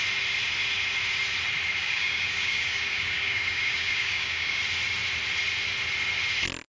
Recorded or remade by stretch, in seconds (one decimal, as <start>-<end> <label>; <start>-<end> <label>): 0.0-1.8 recorded; 1.8-4.6 remade; 4.6-6.7 recorded